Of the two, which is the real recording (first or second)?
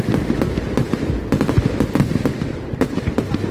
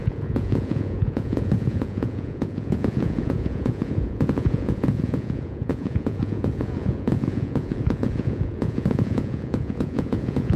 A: first